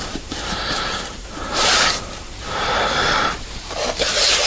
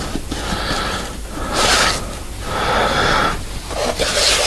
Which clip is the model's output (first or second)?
first